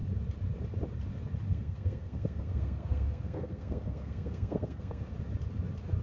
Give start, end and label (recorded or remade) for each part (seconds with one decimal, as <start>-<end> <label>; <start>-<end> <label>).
0.0-1.5 recorded; 1.5-5.1 remade; 5.1-6.0 recorded